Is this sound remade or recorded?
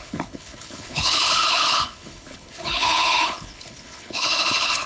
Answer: remade